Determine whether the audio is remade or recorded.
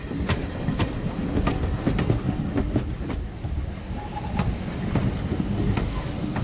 recorded